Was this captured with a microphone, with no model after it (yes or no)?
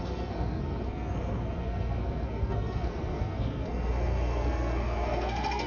no